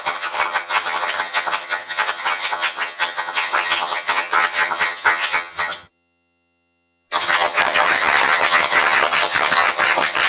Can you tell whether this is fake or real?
fake